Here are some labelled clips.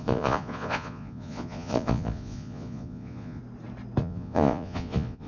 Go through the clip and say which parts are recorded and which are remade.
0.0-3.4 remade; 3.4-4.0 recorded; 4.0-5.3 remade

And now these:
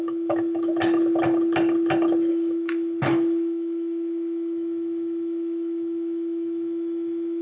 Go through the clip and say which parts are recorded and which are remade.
0.0-0.7 remade; 0.7-2.3 recorded; 2.3-7.4 remade

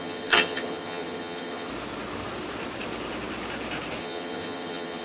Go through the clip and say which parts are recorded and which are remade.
0.0-1.7 remade; 1.7-4.0 recorded; 4.0-5.0 remade